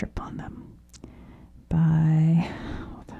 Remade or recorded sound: recorded